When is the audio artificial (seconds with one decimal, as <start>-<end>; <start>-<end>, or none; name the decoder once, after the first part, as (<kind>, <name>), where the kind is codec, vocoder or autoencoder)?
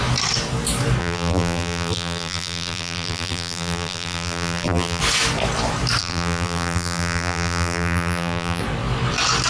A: 1.0-5.0 (vocoder, BigVGAN v2); 6.0-8.6